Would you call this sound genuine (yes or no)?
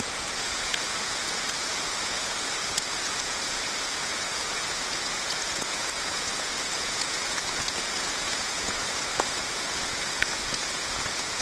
no